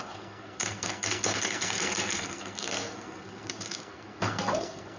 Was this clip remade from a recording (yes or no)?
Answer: yes